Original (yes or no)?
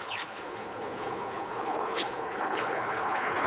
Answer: no